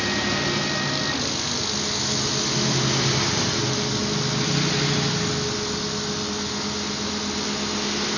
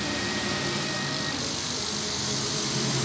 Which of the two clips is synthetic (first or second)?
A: second